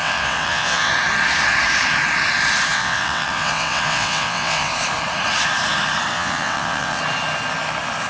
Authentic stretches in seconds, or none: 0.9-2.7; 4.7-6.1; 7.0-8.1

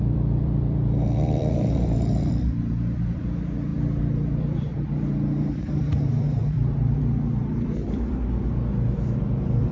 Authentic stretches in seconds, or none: 3.7-4.4

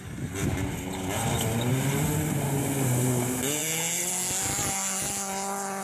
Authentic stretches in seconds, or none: 0.0-3.6; 4.1-5.8